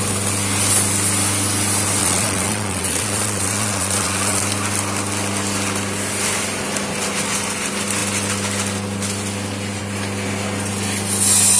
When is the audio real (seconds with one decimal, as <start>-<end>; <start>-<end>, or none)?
0.0-2.0; 4.4-11.6